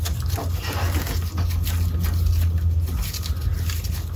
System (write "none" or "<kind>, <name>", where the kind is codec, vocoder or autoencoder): none